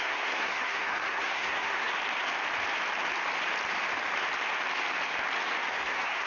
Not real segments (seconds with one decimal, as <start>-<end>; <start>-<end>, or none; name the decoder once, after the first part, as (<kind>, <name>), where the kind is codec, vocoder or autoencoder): 0.0-1.9 (codec, SNAC); 5.7-6.3

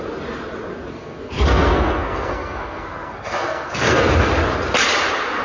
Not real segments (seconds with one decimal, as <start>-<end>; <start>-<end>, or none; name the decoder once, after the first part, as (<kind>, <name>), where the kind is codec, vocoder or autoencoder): 0.9-4.1 (codec, SNAC)

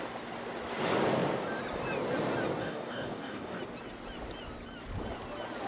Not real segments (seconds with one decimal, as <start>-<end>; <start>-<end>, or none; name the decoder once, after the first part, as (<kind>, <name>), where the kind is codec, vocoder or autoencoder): 2.6-3.6 (codec, DAC)